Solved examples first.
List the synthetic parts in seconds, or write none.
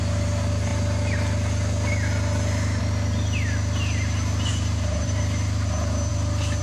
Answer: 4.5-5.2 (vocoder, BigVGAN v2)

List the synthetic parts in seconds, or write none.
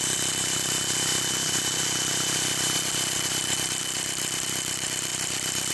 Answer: 0.0-5.7 (vocoder, BigVGAN v2)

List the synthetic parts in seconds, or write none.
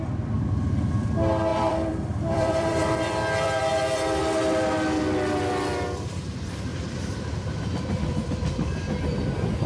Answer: 1.5-4.2 (vocoder, BigVGAN v2); 6.7-7.3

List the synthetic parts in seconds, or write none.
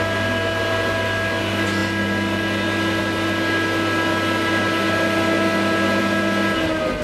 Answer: none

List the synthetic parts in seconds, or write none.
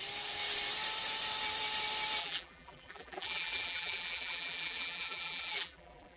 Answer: 2.2-6.2 (vocoder, BigVGAN v2)